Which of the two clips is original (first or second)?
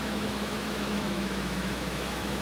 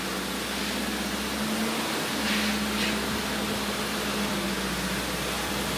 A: second